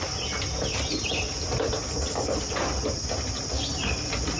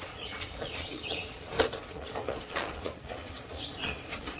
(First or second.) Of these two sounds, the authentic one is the first